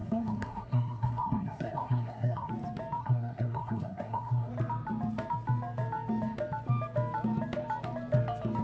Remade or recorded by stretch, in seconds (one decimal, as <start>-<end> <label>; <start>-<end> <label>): 0.0-2.5 remade; 2.5-3.0 recorded; 3.0-4.5 remade; 4.5-8.6 recorded